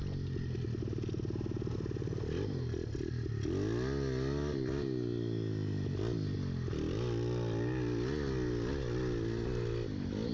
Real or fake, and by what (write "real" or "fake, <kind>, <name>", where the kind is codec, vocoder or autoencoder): real